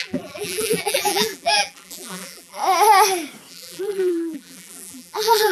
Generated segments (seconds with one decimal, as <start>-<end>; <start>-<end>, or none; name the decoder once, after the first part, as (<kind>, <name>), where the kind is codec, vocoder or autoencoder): 0.0-2.6 (vocoder, BigVGAN v2); 3.5-5.5

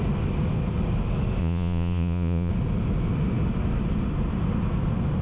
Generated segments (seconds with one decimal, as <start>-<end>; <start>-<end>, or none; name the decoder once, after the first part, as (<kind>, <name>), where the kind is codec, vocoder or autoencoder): 1.4-2.5 (vocoder, Vocos)

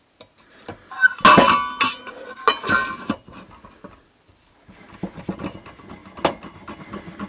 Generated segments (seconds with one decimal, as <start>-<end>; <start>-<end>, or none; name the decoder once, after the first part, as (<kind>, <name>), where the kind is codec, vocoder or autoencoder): none

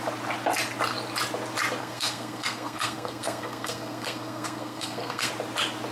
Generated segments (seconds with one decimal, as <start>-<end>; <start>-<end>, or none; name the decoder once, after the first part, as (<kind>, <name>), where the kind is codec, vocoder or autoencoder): 1.8-5.3 (codec, SNAC)